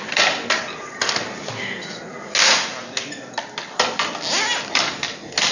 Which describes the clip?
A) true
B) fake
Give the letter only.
A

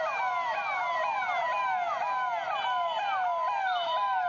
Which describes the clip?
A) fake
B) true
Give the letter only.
B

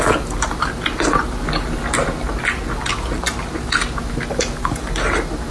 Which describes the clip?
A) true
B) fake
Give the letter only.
A